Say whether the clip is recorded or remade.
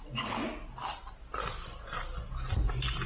recorded